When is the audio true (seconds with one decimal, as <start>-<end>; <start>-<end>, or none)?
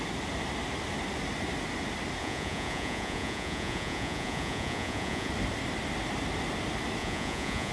0.0-2.2; 5.3-7.0